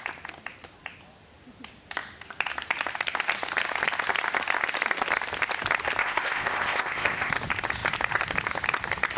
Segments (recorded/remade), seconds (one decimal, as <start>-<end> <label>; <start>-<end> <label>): 0.0-6.0 recorded; 6.0-7.3 remade; 7.3-9.2 recorded